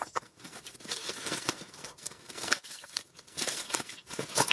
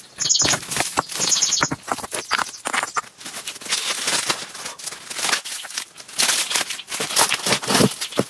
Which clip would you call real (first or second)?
second